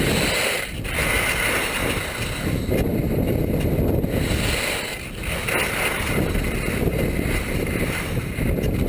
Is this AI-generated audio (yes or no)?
no